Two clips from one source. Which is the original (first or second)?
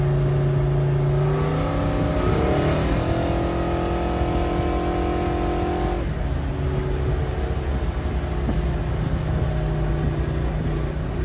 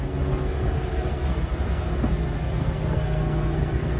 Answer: first